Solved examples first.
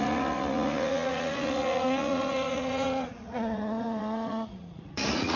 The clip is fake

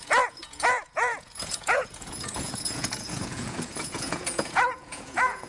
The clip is fake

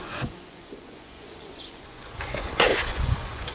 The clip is fake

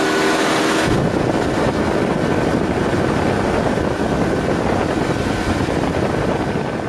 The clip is real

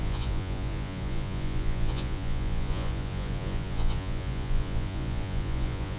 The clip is fake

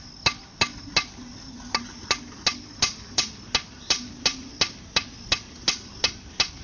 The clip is real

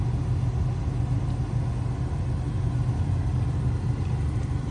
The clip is real